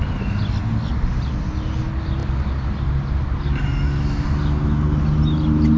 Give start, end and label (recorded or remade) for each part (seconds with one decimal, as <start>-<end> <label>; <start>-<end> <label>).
0.0-5.8 recorded